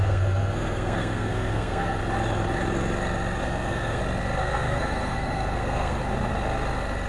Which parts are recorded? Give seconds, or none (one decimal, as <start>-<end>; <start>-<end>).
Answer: 2.0-3.4; 4.0-4.4; 6.0-7.1